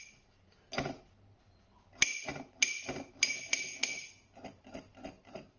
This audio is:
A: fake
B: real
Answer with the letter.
B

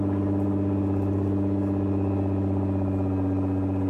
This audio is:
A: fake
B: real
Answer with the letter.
B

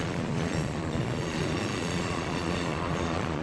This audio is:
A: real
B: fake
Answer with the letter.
B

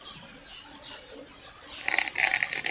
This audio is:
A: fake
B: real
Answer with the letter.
B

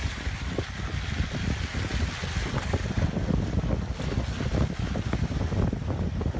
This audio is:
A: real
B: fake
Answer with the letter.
A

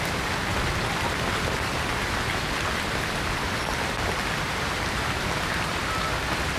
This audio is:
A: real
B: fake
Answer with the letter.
A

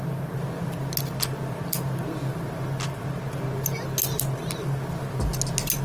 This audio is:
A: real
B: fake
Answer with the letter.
A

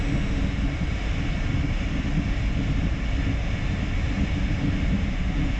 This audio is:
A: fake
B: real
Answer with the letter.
B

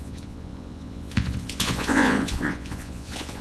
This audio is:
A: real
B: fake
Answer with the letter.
B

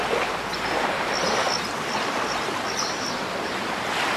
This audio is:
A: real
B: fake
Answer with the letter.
A